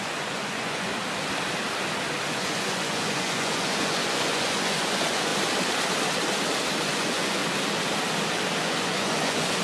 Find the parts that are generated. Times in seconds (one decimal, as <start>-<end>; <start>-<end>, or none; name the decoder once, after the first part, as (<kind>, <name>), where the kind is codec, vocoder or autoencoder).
0.0-0.9 (vocoder, Vocos); 2.3-5.3; 6.8-7.4; 8.6-9.6